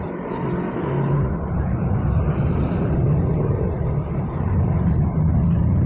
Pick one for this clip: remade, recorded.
recorded